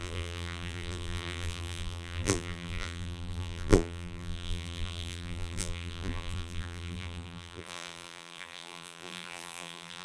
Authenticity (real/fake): fake